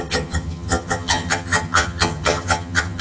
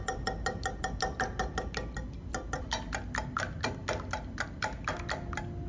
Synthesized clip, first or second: first